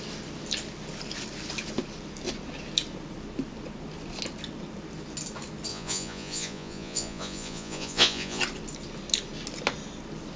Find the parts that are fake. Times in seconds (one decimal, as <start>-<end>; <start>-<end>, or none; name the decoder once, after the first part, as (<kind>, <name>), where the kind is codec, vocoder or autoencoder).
5.7-8.4 (vocoder, Vocos)